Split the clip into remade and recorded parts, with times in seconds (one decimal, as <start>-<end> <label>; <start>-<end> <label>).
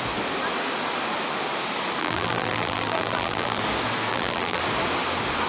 0.0-2.0 recorded; 2.0-3.6 remade; 3.6-4.1 recorded; 4.1-4.6 remade; 4.6-5.5 recorded